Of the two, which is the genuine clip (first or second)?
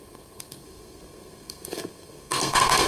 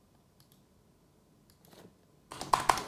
second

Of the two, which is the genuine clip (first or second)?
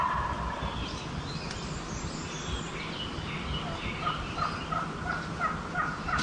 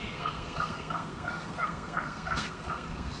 first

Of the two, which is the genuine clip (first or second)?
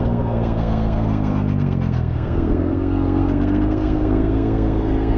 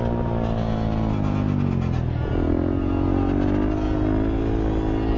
second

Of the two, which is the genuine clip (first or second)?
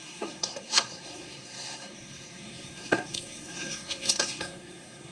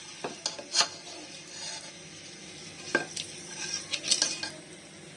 second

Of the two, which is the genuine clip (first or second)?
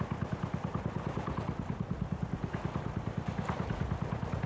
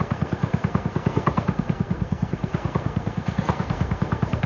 first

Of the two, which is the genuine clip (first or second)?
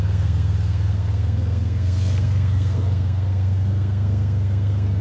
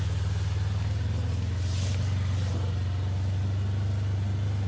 second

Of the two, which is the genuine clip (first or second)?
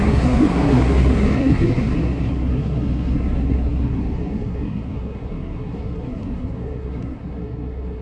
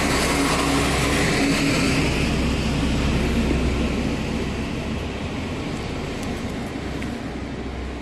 second